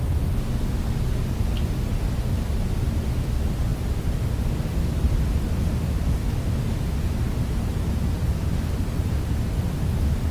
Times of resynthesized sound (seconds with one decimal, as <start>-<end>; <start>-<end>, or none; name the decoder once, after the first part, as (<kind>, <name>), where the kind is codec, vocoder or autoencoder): none